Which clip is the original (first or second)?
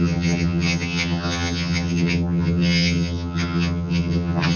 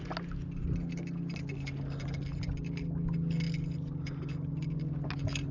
second